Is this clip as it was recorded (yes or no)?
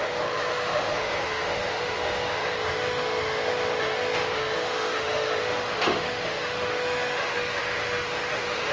no